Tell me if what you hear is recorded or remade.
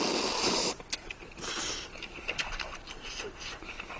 recorded